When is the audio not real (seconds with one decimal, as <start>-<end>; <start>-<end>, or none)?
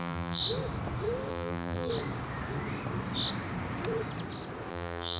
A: 0.0-0.4; 1.3-1.9; 4.7-5.2